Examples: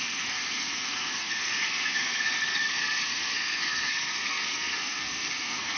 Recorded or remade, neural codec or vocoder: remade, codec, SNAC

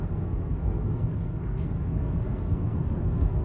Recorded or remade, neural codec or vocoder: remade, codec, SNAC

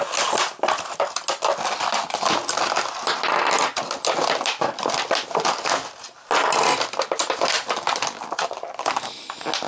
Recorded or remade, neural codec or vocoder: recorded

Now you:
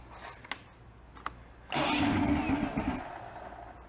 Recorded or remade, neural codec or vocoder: recorded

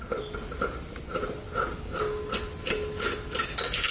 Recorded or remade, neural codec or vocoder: recorded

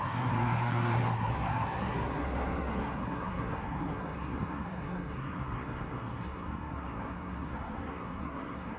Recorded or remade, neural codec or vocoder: remade, codec, SNAC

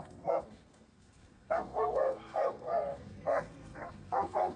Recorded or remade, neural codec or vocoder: remade, codec, SNAC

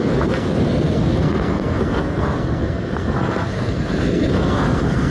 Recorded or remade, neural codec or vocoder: remade, codec, SNAC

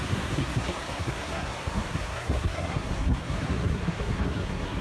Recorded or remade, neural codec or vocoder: remade, codec, SNAC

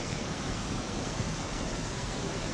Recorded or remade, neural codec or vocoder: remade, codec, SNAC